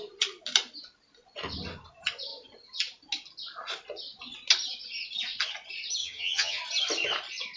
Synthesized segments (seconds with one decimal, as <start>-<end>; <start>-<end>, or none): 6.0-6.6